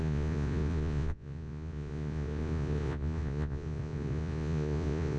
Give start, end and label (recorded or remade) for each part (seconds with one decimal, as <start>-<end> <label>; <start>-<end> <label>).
0.0-5.2 remade